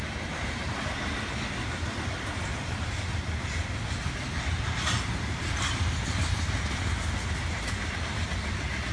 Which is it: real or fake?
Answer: real